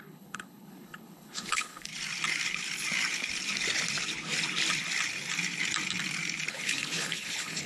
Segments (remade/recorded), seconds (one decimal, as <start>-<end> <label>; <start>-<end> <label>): 0.0-1.9 remade; 1.9-6.5 recorded; 6.5-7.7 remade